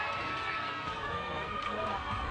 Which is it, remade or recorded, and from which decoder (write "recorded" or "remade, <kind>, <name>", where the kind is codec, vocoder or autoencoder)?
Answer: remade, codec, SNAC